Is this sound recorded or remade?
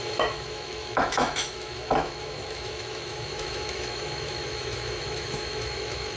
remade